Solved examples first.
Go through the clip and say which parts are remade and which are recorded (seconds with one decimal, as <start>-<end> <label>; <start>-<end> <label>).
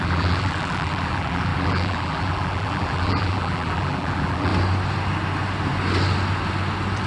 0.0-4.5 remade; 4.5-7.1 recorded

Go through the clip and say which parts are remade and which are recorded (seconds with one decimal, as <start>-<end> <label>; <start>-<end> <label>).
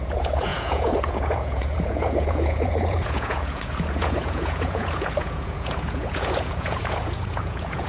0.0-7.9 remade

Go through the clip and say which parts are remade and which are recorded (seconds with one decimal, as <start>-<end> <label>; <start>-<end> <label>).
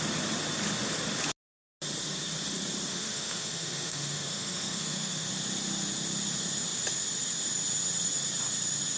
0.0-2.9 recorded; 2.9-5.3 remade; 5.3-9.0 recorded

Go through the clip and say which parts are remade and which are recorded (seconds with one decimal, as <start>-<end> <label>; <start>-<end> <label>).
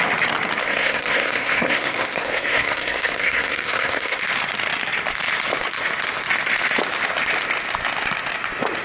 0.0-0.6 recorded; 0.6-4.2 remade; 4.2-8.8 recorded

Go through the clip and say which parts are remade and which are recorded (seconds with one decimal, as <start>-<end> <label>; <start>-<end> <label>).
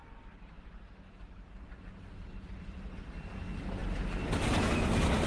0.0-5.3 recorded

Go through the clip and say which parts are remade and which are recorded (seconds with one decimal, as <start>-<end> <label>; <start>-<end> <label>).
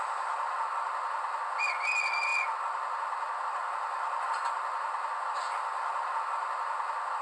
0.0-7.2 recorded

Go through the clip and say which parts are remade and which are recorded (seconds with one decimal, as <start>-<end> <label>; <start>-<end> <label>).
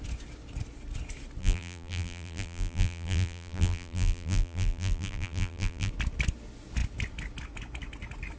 0.0-1.4 recorded; 1.4-5.9 remade; 5.9-8.4 recorded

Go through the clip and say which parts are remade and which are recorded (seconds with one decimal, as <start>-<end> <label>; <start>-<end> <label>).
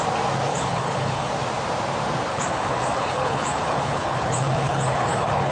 0.0-0.5 recorded; 0.5-1.3 remade; 1.3-2.3 recorded; 2.3-5.5 remade